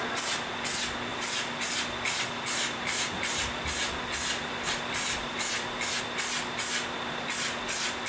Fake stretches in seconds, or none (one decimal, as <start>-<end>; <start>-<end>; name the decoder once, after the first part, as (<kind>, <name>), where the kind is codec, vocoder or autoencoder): 1.1-6.0 (vocoder, BigVGAN v2)